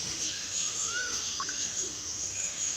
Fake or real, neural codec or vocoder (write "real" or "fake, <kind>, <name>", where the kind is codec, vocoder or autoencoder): fake, autoencoder, DAC-VAE